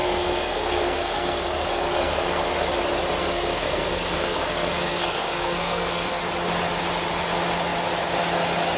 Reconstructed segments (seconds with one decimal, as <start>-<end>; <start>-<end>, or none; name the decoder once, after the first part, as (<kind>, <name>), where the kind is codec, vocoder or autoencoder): 0.0-2.7 (codec, SNAC); 3.2-6.2